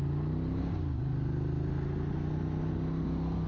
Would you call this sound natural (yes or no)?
yes